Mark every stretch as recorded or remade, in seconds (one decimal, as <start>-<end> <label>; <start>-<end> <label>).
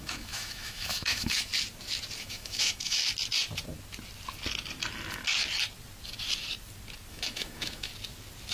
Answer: 0.0-1.5 remade; 1.5-2.2 recorded; 2.2-3.0 remade; 3.0-7.1 recorded; 7.1-7.9 remade; 7.9-8.5 recorded